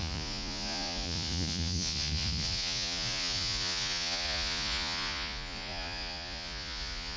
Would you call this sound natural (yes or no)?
no